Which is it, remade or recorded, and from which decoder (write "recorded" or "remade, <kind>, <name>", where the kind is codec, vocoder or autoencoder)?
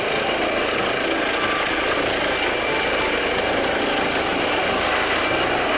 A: recorded